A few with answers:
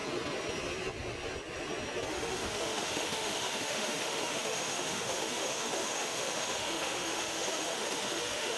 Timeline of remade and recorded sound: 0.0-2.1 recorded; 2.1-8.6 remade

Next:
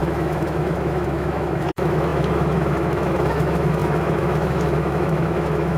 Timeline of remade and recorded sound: 0.0-5.8 remade